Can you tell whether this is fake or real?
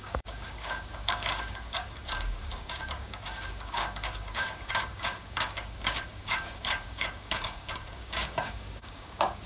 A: fake